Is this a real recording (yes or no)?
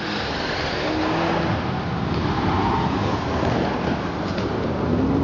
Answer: yes